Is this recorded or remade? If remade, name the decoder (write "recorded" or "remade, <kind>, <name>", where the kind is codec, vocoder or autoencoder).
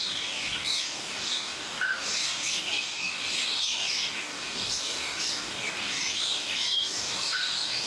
remade, codec, DAC